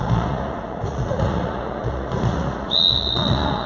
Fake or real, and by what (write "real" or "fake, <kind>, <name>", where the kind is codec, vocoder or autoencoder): fake, vocoder, Vocos